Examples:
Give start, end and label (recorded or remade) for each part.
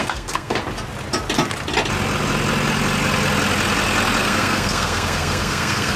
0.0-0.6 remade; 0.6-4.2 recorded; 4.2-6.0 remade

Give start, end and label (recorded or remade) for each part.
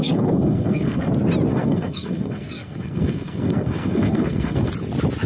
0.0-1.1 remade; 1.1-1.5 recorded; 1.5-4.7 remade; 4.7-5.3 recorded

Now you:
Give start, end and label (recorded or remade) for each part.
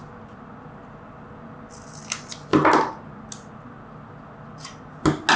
0.0-5.4 recorded